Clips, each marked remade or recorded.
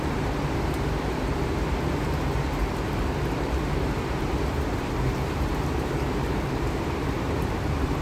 remade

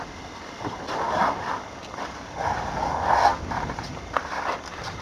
recorded